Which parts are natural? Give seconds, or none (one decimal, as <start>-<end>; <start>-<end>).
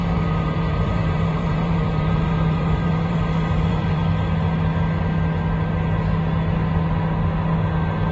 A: 4.0-8.1